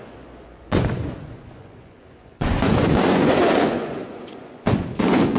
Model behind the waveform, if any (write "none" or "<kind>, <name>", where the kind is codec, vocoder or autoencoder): vocoder, Vocos